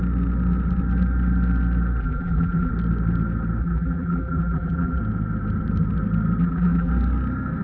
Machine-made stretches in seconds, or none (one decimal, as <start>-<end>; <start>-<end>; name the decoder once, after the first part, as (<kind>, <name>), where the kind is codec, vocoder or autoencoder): 2.0-2.7 (vocoder, BigVGAN v2); 3.6-5.0; 6.4-6.9